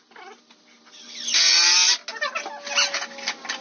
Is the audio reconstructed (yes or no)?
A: no